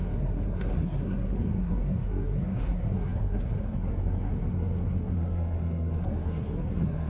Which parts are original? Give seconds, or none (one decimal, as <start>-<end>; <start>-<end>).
none